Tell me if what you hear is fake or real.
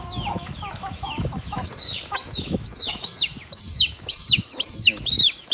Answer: fake